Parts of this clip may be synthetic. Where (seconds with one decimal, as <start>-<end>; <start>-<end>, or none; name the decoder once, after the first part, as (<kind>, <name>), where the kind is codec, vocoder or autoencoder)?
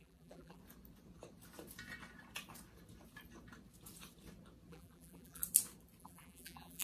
0.0-0.6 (vocoder, BigVGAN v2); 4.7-5.4; 6.0-6.8